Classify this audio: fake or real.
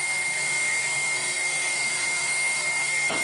fake